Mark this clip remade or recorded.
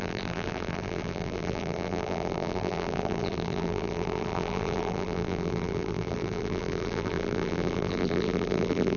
remade